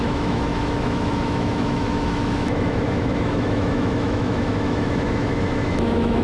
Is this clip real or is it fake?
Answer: fake